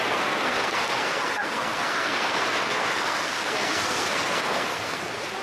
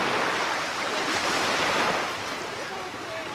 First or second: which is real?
second